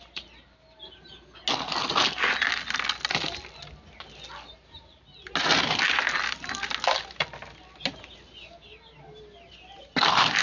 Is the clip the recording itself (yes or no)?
yes